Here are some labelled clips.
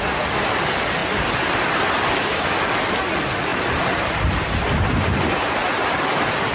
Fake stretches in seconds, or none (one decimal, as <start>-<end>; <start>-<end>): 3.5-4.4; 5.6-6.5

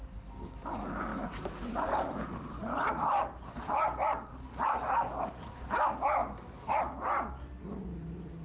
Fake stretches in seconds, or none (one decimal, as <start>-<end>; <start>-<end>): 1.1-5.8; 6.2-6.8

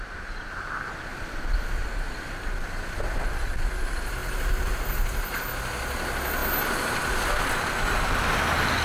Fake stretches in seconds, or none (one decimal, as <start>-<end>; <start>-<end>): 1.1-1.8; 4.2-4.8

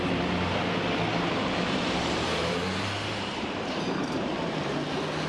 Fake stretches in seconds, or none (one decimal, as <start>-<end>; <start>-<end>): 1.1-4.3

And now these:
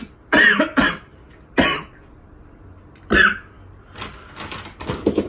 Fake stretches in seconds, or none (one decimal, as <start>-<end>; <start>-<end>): none

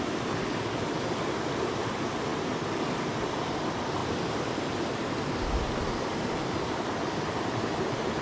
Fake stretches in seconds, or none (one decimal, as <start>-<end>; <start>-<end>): 4.0-5.0

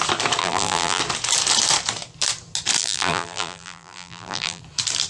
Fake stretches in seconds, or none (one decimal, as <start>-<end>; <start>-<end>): 0.4-1.0; 2.8-4.6